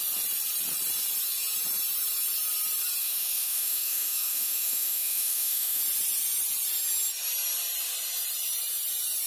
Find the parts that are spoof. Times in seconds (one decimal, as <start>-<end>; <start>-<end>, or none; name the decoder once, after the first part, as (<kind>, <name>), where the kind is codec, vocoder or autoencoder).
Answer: 3.0-5.8 (autoencoder, DAC-VAE)